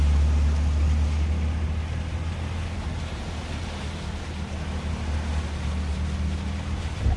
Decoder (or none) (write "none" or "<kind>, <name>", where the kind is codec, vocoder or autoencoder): none